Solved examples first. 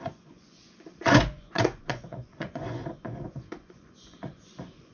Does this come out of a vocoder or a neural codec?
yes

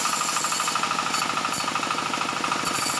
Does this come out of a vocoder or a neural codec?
no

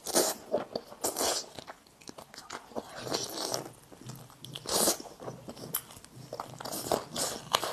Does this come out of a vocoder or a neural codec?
no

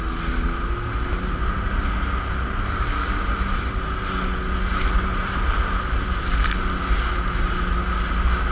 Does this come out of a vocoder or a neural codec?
no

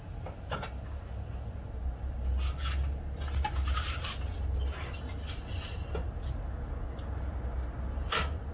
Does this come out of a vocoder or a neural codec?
no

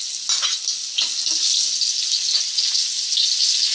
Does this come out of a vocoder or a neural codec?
no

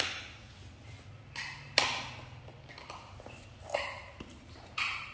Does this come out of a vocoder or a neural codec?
no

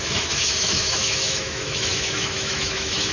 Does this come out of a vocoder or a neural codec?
yes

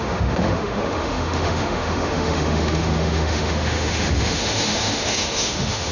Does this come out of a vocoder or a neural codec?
yes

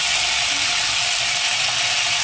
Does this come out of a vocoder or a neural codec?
no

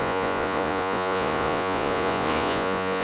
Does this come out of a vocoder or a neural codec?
yes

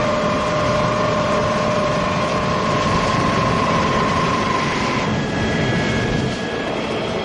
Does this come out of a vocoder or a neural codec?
no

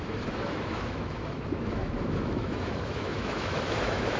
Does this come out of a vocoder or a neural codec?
yes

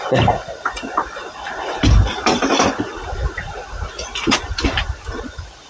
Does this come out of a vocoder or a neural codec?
no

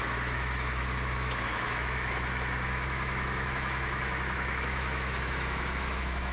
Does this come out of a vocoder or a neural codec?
yes